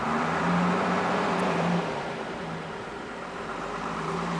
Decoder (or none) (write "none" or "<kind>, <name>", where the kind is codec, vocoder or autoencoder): vocoder, BigVGAN v2